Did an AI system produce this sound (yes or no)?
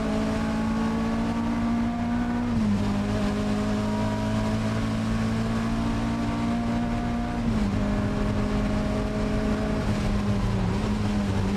no